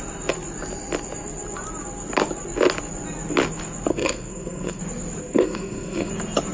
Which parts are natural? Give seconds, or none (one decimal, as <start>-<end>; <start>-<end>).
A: 0.0-3.9; 4.8-5.2; 6.1-6.5